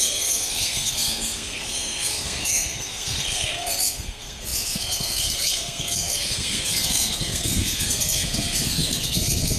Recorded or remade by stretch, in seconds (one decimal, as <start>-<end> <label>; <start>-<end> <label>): 0.0-9.6 remade